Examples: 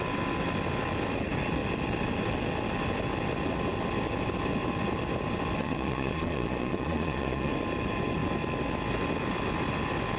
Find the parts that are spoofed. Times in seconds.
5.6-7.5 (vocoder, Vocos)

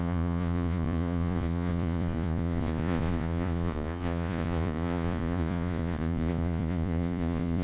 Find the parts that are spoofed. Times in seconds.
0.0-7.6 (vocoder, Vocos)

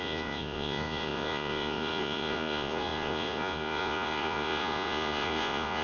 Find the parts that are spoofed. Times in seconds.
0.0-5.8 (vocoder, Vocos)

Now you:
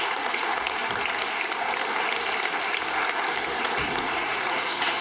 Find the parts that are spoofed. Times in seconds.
0.0-0.8 (vocoder, Vocos); 3.6-5.0

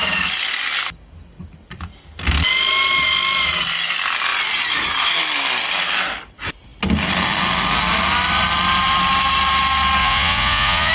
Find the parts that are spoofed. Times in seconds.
10.0-10.9 (vocoder, Vocos)

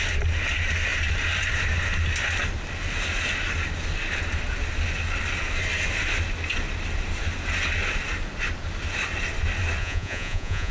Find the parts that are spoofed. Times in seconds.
9.8-10.7 (vocoder, Vocos)

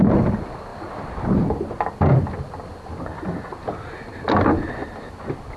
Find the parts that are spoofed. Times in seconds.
none

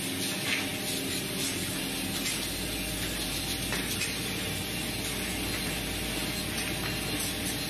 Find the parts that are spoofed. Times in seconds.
none